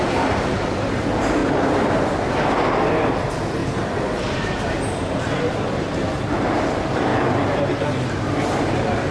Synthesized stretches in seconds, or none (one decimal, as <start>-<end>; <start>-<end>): 0.0-1.4; 3.1-3.6; 4.2-7.1; 8.7-9.1

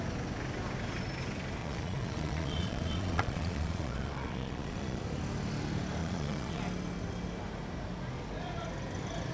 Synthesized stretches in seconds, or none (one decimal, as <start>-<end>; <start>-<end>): 1.6-5.0; 6.0-6.6

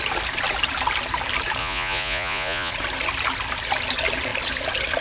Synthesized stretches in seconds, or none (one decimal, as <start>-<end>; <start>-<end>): 1.6-2.7

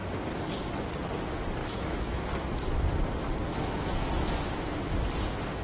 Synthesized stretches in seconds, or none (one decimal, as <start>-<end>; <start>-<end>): 1.6-2.2; 3.5-4.8

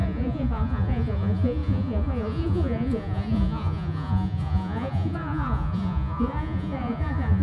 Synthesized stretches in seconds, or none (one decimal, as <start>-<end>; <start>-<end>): 0.0-7.4

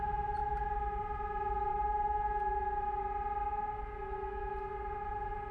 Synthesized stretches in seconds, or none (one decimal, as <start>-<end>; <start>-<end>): 1.7-3.0

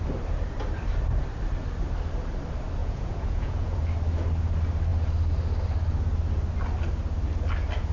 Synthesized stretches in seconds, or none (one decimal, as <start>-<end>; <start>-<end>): 2.8-3.8

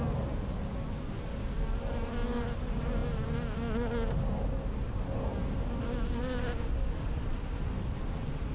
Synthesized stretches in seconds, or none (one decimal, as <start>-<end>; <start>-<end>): none